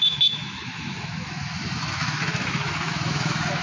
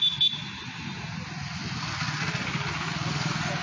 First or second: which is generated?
first